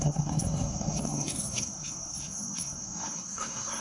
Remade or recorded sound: remade